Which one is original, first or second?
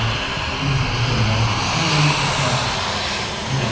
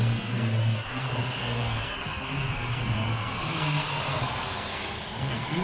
first